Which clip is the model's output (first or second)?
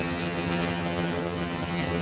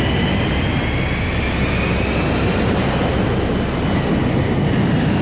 first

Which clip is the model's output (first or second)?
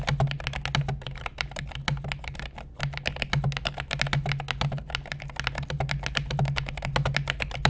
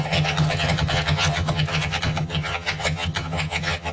second